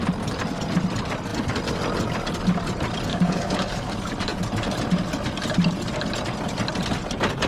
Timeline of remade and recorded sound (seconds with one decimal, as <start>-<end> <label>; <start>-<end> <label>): 0.0-3.1 recorded; 3.1-3.9 remade; 3.9-7.5 recorded